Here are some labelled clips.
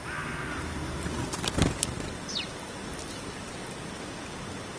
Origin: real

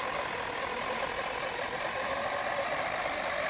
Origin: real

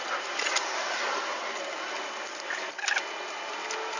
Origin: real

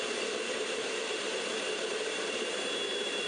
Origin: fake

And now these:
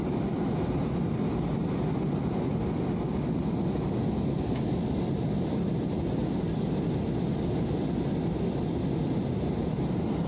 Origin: real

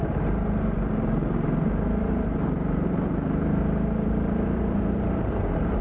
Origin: fake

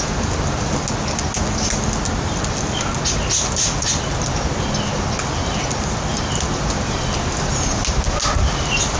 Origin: real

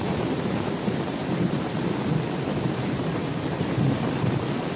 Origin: fake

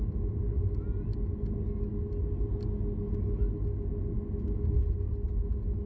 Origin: real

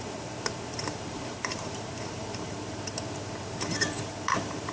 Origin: fake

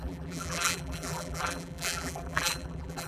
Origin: fake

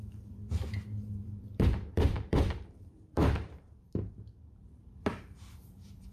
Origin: fake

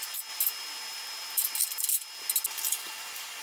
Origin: real